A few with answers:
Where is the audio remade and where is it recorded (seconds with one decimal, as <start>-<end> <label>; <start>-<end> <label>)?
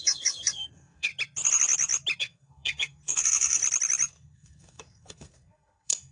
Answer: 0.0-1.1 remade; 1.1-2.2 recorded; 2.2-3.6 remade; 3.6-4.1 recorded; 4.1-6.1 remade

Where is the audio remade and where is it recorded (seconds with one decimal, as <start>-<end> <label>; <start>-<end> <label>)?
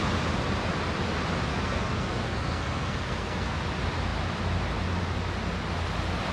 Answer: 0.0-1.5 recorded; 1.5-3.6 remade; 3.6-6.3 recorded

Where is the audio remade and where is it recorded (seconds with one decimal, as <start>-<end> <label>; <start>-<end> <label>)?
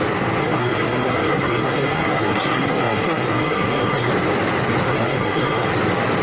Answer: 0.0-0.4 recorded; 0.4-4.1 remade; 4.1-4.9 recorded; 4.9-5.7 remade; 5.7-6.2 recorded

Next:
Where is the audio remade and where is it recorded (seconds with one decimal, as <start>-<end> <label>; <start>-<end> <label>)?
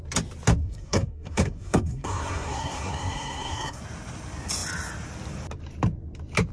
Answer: 0.0-0.6 recorded; 0.6-3.8 remade; 3.8-6.5 recorded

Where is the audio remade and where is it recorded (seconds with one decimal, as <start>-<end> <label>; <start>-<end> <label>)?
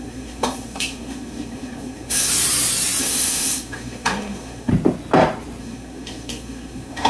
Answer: 0.0-2.3 remade; 2.3-3.0 recorded; 3.0-4.7 remade; 4.7-5.6 recorded; 5.6-7.1 remade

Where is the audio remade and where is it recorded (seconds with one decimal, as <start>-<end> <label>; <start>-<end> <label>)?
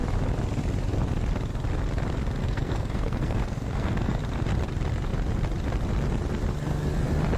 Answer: 0.0-2.4 recorded; 2.4-4.2 remade; 4.2-7.4 recorded